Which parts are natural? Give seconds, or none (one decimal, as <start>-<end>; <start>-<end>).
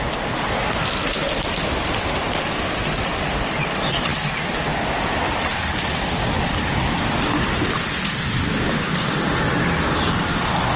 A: 0.0-10.8